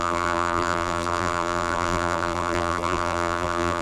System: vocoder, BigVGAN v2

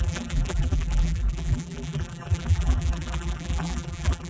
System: vocoder, BigVGAN v2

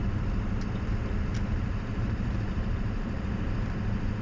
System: vocoder, BigVGAN v2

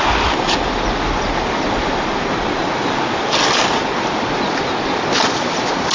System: none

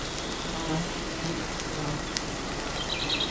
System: none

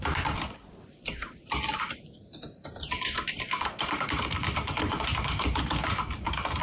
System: vocoder, BigVGAN v2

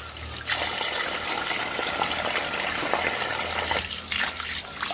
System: none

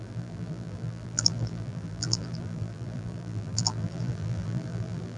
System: vocoder, BigVGAN v2